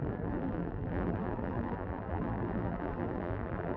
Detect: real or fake fake